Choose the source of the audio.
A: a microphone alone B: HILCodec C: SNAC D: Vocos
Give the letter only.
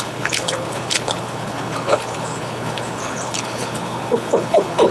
B